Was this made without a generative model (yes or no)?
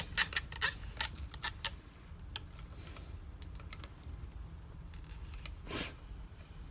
yes